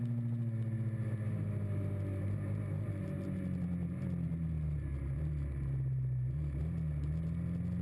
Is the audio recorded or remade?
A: recorded